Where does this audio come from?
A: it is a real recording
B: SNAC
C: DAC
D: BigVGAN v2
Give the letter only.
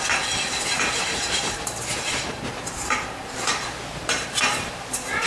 D